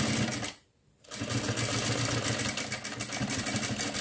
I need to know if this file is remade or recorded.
recorded